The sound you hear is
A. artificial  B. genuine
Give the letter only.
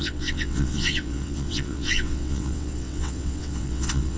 A